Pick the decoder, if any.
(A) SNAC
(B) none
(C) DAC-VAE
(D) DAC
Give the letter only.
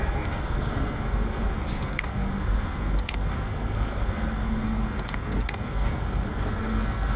A